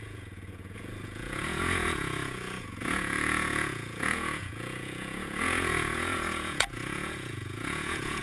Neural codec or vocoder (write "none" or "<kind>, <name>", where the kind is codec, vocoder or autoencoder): vocoder, Vocos